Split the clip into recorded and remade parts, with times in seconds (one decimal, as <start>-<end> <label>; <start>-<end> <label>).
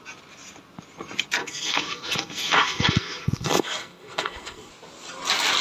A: 0.0-1.4 recorded; 1.4-4.7 remade; 4.7-5.6 recorded